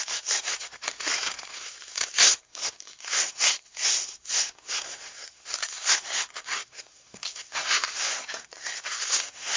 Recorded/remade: remade